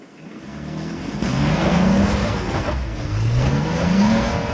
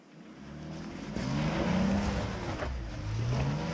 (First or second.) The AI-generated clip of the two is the first